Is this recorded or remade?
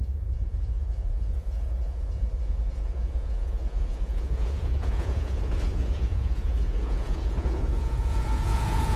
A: remade